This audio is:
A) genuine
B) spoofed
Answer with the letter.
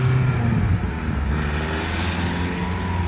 A